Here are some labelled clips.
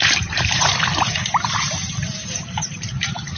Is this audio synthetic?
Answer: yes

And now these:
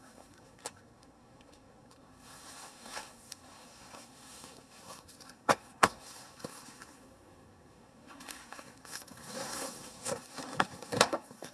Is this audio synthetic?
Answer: yes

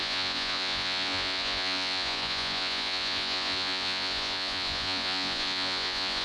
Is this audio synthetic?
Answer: yes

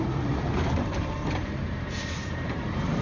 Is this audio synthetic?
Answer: yes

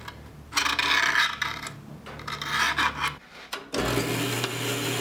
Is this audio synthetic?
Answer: no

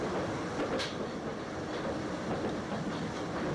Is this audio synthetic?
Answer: no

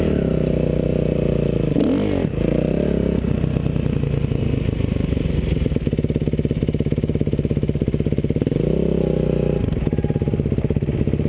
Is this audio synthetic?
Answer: no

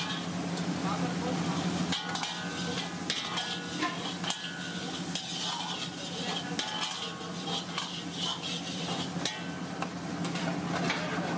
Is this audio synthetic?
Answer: no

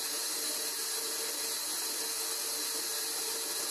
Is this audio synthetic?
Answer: no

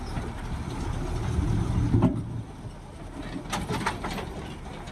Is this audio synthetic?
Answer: no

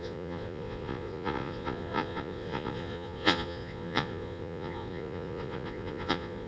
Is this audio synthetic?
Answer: yes